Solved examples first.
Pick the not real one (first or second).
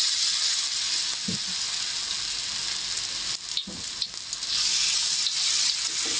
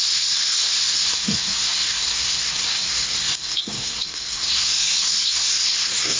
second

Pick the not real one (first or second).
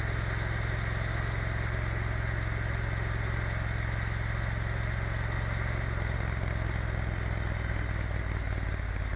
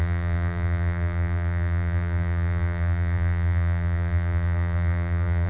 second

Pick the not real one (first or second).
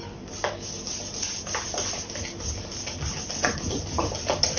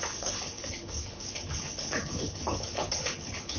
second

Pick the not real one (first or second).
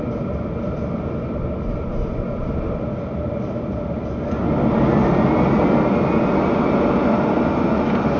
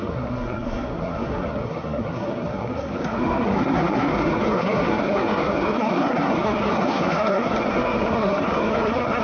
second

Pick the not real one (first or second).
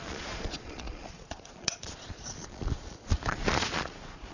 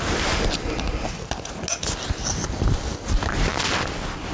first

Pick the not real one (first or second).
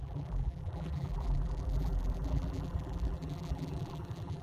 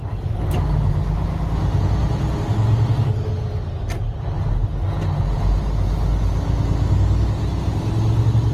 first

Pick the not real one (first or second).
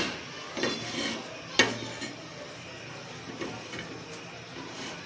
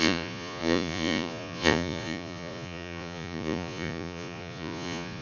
second